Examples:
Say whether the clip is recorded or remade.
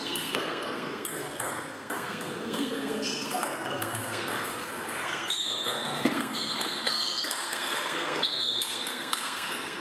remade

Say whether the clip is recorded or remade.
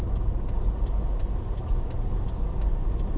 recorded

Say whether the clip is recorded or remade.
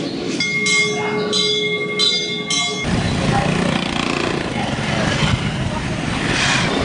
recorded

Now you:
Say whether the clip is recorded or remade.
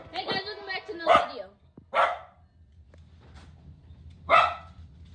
recorded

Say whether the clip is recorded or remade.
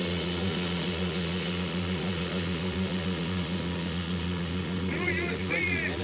remade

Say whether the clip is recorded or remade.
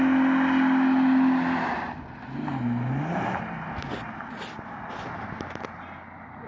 recorded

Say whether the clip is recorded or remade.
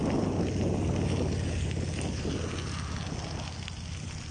recorded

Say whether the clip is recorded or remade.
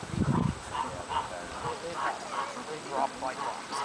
recorded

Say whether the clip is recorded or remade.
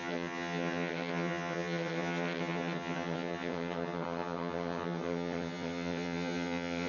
remade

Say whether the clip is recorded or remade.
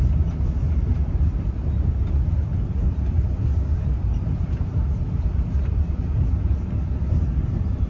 remade